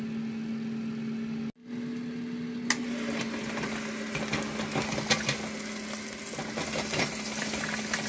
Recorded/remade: recorded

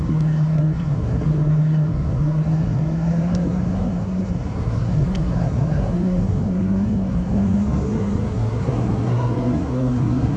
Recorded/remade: remade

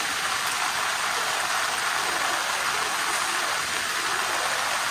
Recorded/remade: recorded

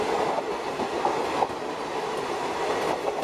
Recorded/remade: recorded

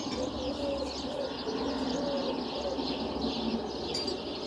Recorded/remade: recorded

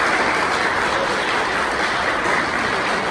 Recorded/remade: recorded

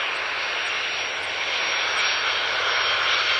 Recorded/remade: recorded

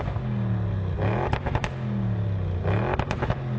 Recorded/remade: recorded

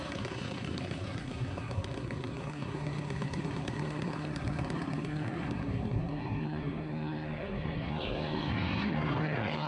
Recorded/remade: remade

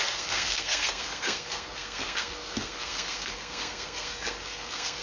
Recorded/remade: remade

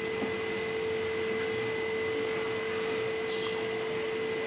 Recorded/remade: recorded